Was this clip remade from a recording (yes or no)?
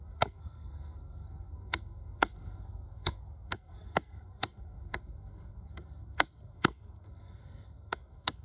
yes